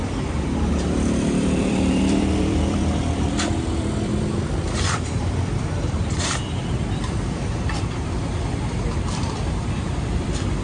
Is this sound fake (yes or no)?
yes